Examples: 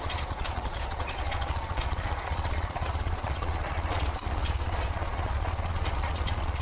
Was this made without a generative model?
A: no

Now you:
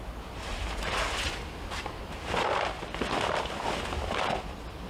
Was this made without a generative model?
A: yes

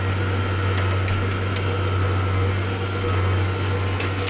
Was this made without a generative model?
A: yes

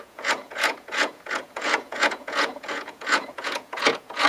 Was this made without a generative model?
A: no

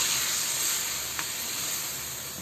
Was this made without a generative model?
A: yes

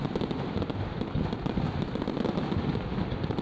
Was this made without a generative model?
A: yes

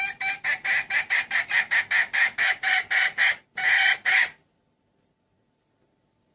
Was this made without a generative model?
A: yes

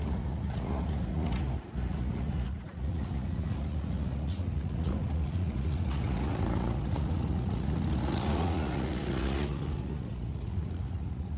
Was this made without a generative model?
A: no